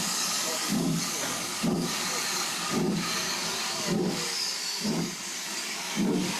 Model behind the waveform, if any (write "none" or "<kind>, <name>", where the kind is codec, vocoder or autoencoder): codec, DAC